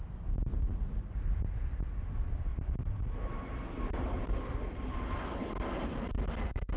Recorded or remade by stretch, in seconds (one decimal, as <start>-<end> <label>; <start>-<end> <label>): 0.0-2.5 recorded; 2.5-3.0 remade; 3.0-4.2 recorded; 4.2-5.3 remade; 5.3-6.8 recorded